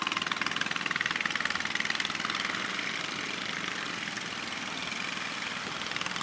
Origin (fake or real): real